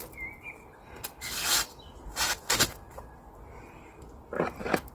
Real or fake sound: real